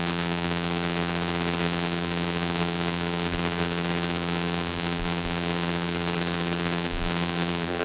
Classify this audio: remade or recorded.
remade